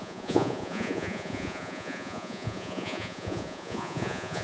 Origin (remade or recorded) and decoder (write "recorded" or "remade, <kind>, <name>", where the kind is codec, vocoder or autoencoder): remade, vocoder, Vocos